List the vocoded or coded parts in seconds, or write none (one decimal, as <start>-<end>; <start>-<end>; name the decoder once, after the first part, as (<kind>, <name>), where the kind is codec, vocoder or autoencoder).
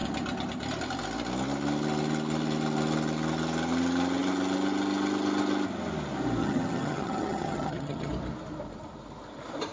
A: 6.4-8.1 (vocoder, HiFi-GAN)